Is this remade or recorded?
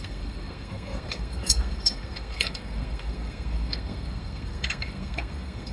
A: remade